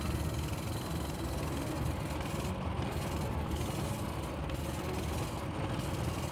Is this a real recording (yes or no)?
yes